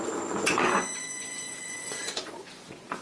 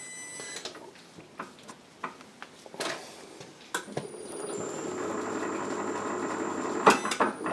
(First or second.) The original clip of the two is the second